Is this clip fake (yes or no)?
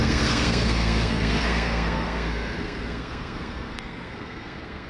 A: yes